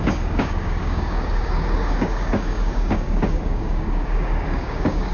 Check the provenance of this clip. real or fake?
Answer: fake